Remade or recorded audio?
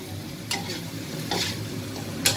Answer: remade